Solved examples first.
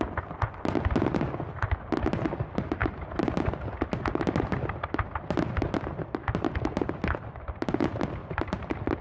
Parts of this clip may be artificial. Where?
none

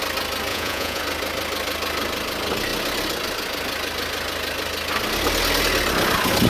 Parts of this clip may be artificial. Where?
0.5-1.0 (vocoder, Vocos)

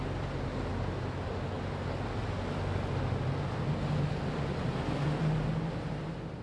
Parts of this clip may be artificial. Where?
none

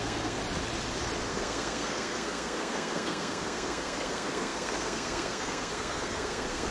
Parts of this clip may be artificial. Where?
0.0-0.4 (codec, SNAC); 1.3-6.7

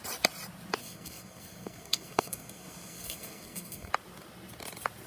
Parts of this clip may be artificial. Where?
0.8-3.9 (codec, SNAC)

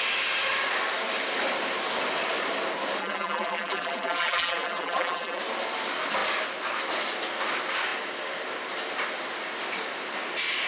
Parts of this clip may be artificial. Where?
3.0-5.4 (vocoder, BigVGAN v2)

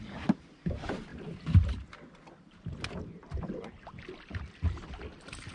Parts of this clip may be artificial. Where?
none

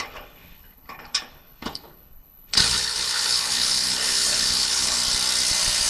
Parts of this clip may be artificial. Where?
0.0-5.0 (codec, HILCodec)